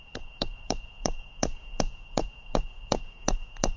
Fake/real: fake